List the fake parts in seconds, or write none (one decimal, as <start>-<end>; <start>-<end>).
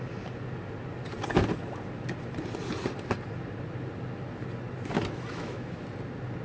5.3-5.8